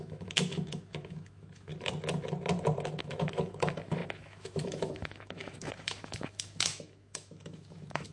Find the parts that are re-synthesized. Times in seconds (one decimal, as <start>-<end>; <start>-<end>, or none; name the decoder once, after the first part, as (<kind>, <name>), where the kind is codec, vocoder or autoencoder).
0.0-1.7 (autoencoder, DAC-VAE); 3.0-8.1